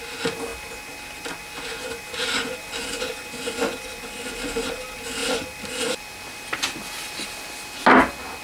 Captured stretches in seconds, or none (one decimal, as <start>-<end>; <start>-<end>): 0.0-8.4